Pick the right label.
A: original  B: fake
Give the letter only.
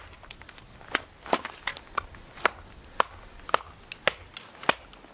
A